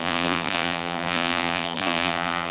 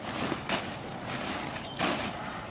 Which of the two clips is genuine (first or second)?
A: second